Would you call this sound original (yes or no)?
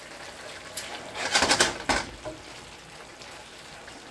yes